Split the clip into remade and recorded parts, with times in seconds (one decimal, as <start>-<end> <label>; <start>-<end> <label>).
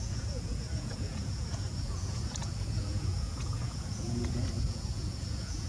0.0-5.7 remade